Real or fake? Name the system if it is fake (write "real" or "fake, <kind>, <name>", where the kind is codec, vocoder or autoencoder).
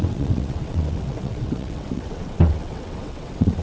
fake, vocoder, WaveNeXt